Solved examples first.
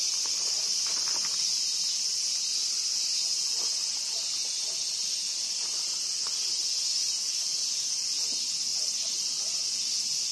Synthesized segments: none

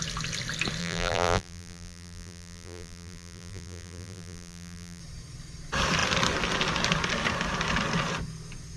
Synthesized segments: 0.8-5.0 (vocoder, BigVGAN v2)

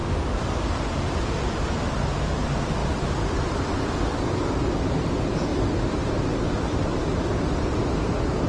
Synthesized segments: 0.0-1.0 (vocoder, BigVGAN v2); 2.8-3.7; 5.5-6.2; 6.9-7.6

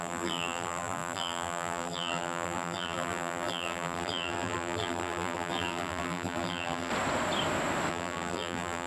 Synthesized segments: 0.0-6.9 (vocoder, BigVGAN v2); 7.9-8.9

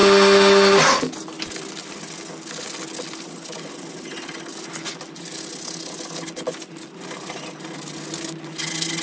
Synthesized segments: none